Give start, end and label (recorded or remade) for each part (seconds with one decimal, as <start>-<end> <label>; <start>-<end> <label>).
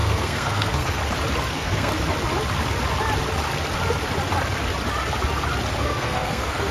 0.0-1.0 remade; 1.0-1.5 recorded; 1.5-1.9 remade; 1.9-5.8 recorded; 5.8-6.7 remade